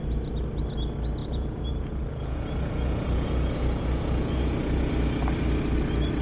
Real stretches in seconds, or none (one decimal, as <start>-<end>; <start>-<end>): 0.0-1.2; 4.9-6.2